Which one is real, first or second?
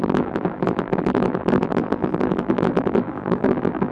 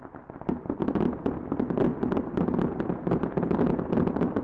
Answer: second